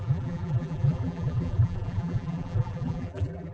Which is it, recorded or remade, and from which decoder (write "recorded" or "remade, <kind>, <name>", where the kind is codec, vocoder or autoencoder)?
remade, vocoder, BigVGAN v2